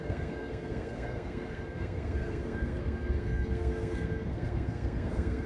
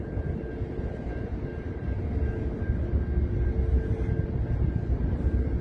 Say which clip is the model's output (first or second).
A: first